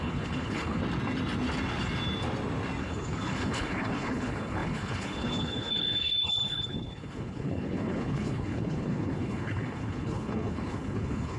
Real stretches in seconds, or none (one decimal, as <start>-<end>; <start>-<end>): 0.8-2.8